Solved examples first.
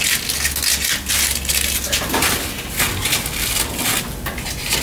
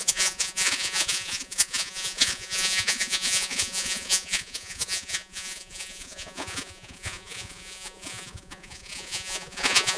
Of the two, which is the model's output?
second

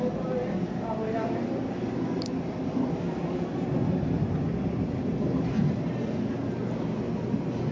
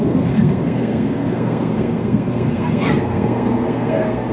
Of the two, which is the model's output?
second